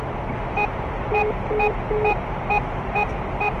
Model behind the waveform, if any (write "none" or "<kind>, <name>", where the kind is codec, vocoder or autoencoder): none